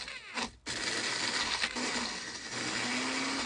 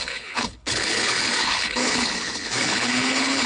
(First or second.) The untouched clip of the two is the first